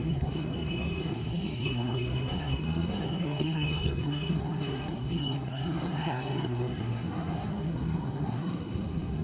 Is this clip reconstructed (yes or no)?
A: yes